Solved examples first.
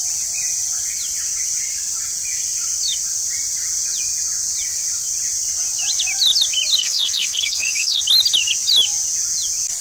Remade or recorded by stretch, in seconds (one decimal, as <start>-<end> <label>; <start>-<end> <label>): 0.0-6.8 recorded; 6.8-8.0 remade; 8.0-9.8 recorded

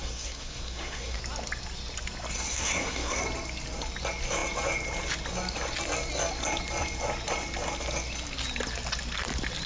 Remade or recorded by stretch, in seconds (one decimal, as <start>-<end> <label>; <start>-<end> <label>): 0.0-1.2 remade; 1.2-2.5 recorded; 2.5-3.2 remade; 3.2-9.7 recorded

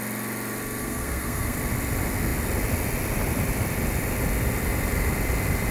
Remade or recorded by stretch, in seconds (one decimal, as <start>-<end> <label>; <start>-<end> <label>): 0.0-0.8 recorded; 0.8-1.6 remade; 1.6-5.7 recorded

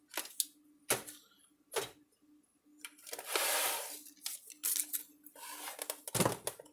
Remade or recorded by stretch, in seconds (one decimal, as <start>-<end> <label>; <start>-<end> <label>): 0.0-6.7 recorded

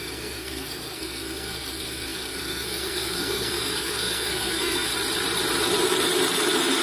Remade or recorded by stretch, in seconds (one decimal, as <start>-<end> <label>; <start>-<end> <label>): 0.0-4.9 remade; 4.9-6.8 recorded

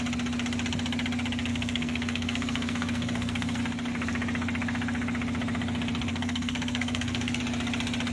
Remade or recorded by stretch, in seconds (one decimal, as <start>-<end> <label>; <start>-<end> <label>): 0.0-1.5 recorded; 1.5-3.6 remade; 3.6-6.1 recorded; 6.1-7.4 remade; 7.4-8.1 recorded